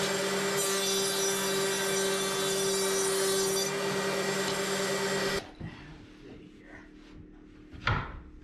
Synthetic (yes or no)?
no